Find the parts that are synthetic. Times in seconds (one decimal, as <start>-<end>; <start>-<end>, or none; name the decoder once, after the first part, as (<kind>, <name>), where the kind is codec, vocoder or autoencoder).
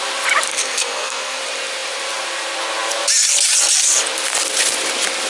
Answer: 0.5-1.4 (codec, SNAC)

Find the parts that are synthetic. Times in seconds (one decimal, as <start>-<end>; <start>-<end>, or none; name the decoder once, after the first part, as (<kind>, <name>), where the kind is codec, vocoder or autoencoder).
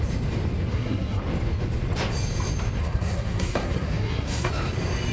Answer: 0.7-1.2 (codec, SNAC); 2.8-4.5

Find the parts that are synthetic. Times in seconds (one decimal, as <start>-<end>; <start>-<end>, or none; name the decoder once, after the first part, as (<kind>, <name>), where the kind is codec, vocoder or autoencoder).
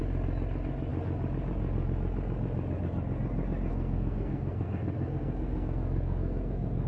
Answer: 3.7-6.9 (codec, SNAC)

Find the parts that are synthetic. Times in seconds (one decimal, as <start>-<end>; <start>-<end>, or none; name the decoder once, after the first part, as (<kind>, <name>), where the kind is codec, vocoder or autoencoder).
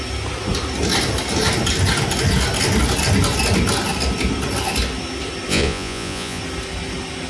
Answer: 5.5-6.4 (vocoder, Vocos)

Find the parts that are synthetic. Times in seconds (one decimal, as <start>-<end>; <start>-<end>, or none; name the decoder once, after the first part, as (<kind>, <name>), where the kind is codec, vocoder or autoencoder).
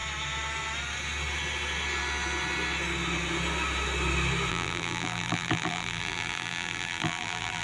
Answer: 4.5-7.6 (vocoder, BigVGAN v2)